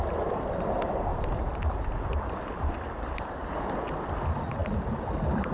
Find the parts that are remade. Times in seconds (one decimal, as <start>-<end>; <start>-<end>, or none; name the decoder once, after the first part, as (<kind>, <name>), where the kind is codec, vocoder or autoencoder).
none